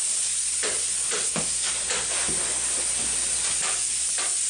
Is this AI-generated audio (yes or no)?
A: no